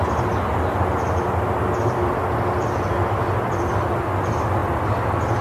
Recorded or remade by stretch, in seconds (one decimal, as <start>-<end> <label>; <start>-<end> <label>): 0.0-5.4 recorded